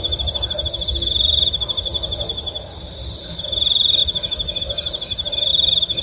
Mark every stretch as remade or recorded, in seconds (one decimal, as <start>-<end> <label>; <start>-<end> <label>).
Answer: 0.0-4.0 remade; 4.0-4.6 recorded; 4.6-5.5 remade; 5.5-6.0 recorded